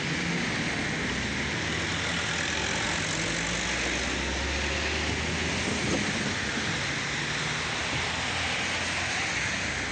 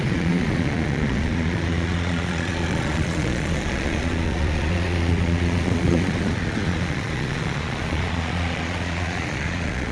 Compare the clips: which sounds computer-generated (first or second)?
second